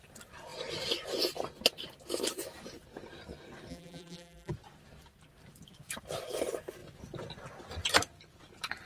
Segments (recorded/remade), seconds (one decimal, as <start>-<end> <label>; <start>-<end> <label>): 0.0-3.7 recorded; 3.7-4.5 remade; 4.5-8.9 recorded

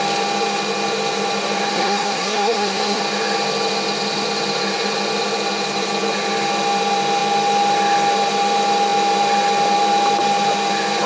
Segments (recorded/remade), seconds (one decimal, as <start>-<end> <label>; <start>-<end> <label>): 0.0-1.7 recorded; 1.7-3.0 remade; 3.0-11.1 recorded

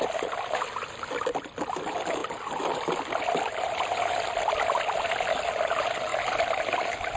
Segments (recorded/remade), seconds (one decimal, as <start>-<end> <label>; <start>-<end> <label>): 0.0-7.2 recorded

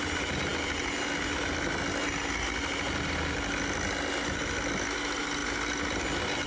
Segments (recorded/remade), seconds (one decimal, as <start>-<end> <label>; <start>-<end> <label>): 0.0-6.5 recorded

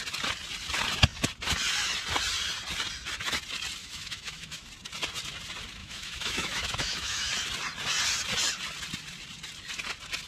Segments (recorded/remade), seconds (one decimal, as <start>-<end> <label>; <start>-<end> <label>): 0.0-3.8 recorded; 3.8-4.7 remade; 4.7-5.8 recorded; 5.8-7.3 remade; 7.3-10.3 recorded

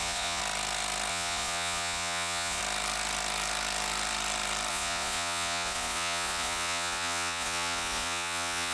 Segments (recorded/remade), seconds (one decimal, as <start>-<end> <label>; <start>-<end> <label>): 0.0-0.4 remade; 0.4-1.1 recorded; 1.1-2.6 remade; 2.6-4.7 recorded; 4.7-8.7 remade

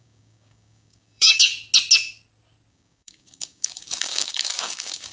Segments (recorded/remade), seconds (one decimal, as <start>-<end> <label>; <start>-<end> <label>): 0.0-1.5 remade; 1.5-2.7 recorded; 2.7-5.1 remade

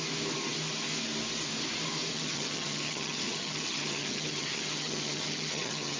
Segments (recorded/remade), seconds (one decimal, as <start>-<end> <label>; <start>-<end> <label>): 0.0-2.1 recorded; 2.1-6.0 remade